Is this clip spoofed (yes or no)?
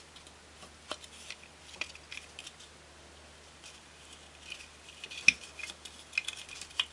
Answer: no